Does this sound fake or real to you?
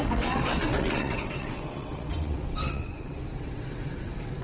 fake